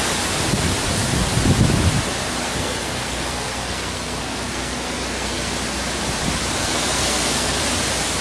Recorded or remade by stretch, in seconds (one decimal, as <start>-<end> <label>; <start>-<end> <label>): 0.0-2.4 recorded; 2.4-5.5 remade; 5.5-6.6 recorded; 6.6-7.6 remade; 7.6-8.2 recorded